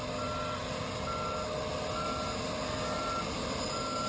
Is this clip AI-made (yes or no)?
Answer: no